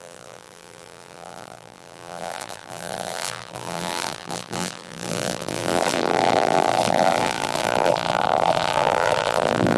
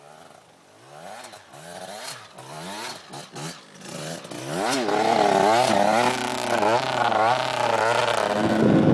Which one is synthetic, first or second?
first